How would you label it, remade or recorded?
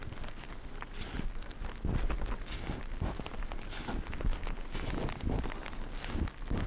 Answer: recorded